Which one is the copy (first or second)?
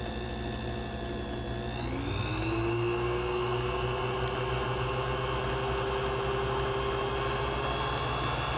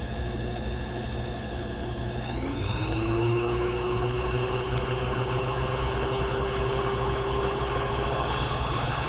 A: second